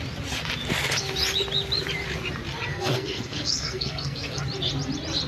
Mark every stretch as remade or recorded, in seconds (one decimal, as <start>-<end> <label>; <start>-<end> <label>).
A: 0.0-2.7 recorded; 2.7-4.4 remade; 4.4-5.3 recorded